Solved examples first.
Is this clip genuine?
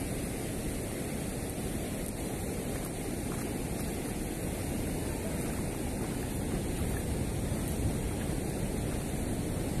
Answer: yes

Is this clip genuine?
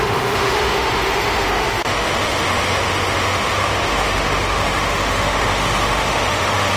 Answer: no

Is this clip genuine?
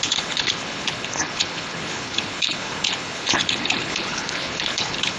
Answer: no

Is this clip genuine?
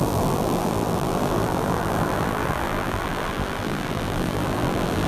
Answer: no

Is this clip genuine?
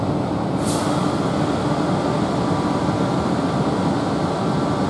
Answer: yes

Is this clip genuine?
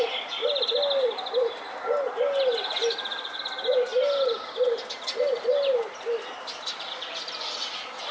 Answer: yes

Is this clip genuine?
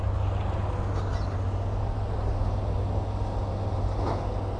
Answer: yes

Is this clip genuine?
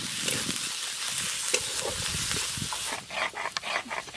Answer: yes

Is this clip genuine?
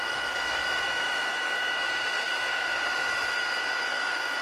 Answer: no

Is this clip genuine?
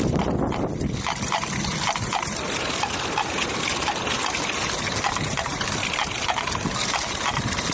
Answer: yes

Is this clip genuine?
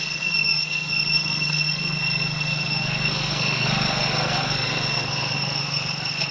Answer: no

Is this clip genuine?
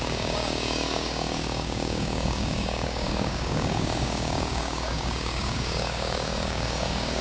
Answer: no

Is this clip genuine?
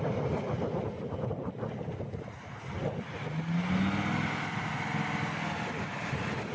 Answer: yes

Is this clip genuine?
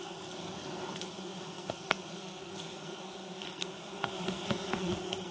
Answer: no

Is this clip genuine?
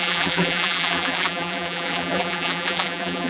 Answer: no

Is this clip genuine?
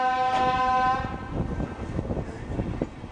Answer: yes